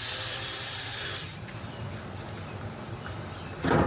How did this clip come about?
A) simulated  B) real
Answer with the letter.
A